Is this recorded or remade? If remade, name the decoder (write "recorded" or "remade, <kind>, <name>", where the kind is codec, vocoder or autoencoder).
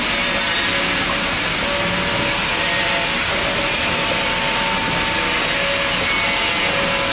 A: recorded